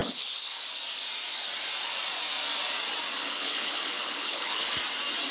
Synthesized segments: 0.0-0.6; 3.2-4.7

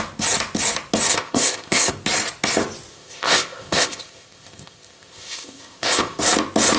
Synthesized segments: 1.1-1.9; 2.9-6.2

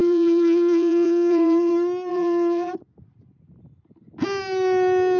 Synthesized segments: 0.0-1.7; 2.1-2.7

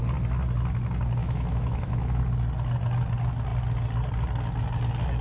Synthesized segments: 1.2-2.2